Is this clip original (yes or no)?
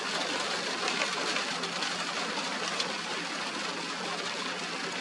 yes